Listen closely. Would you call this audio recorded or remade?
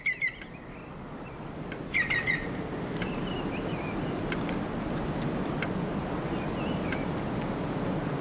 recorded